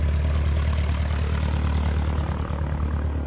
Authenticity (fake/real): real